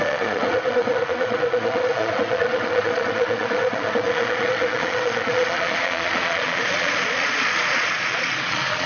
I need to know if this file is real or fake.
fake